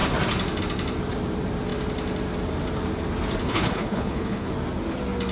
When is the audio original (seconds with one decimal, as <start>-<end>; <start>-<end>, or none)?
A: 0.0-3.4; 4.5-5.3

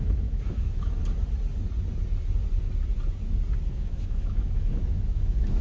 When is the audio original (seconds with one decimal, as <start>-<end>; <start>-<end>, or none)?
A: 1.0-3.7